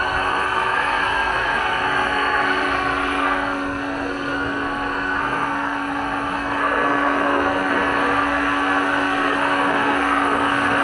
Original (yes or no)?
no